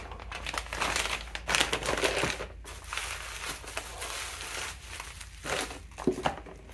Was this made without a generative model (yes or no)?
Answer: yes